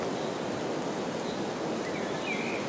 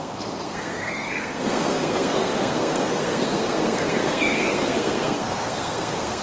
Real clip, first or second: first